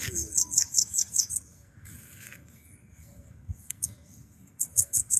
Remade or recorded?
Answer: remade